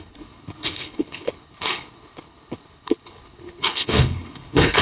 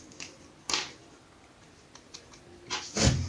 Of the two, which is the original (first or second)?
second